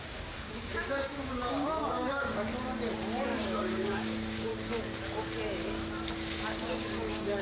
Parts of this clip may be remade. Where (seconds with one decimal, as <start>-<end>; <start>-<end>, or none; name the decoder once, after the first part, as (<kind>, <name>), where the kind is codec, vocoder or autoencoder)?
0.0-2.5 (codec, DAC); 3.2-4.5; 6.6-7.4